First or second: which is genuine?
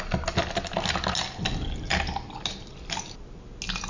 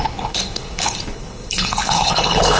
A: first